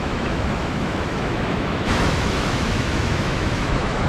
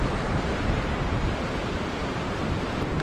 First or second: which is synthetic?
first